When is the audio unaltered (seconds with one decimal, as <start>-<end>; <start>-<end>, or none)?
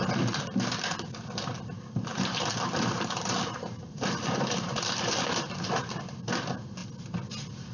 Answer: 0.0-2.1; 5.9-7.7